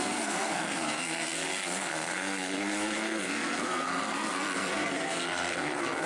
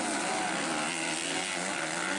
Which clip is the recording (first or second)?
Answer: second